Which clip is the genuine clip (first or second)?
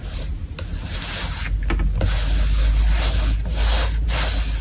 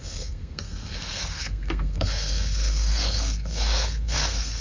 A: first